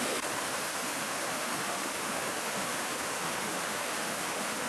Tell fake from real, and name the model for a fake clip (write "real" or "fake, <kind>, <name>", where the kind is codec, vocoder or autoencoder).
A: fake, autoencoder, DAC-VAE